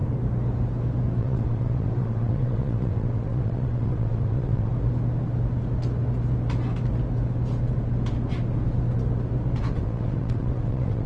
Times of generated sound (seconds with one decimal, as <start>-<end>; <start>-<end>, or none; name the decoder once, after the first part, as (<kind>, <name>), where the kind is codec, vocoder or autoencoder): 1.2-4.7 (vocoder, WaveNeXt); 9.7-11.1